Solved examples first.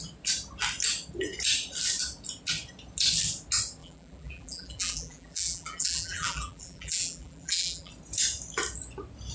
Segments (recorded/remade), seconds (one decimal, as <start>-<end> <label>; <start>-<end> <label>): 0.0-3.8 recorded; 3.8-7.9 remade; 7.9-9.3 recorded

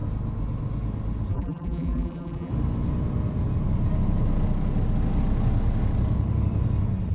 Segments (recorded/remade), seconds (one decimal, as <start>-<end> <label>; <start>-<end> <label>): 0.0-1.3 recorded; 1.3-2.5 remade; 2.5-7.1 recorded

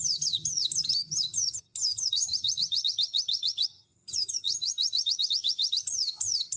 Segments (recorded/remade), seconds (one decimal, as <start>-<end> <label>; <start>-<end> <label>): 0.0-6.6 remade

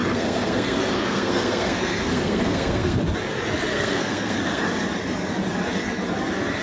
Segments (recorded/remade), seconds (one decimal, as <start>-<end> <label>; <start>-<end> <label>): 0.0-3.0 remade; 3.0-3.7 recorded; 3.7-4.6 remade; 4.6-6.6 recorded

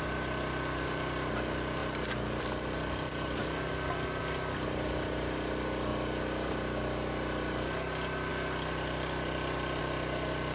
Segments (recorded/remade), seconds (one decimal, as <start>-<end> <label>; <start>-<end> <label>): 0.0-10.5 recorded